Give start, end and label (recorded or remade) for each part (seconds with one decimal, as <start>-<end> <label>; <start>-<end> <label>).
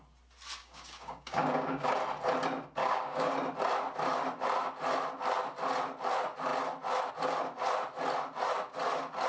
0.0-0.6 recorded; 0.6-1.9 remade; 1.9-2.8 recorded; 2.8-3.3 remade; 3.3-9.3 recorded